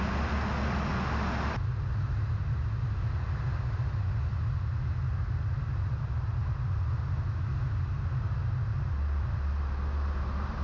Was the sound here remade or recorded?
recorded